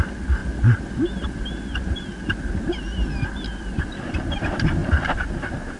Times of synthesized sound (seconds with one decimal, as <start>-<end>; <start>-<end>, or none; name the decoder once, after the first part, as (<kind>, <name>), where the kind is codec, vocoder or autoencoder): 0.0-0.4 (vocoder, BigVGAN v2); 3.6-4.8